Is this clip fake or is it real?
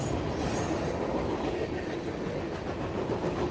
real